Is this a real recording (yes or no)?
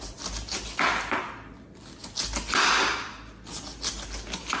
yes